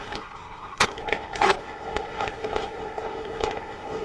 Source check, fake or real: fake